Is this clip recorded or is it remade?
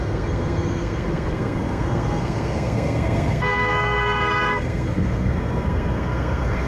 remade